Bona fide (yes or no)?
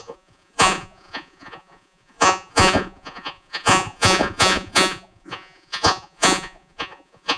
no